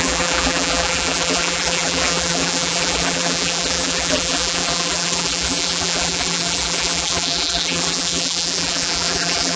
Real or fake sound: fake